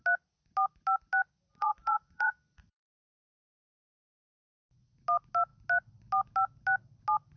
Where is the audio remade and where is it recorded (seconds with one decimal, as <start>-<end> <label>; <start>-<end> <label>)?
0.0-1.5 recorded; 1.5-2.9 remade; 2.9-7.4 recorded